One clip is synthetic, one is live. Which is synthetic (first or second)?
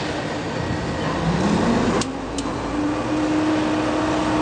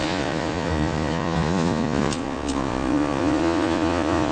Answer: second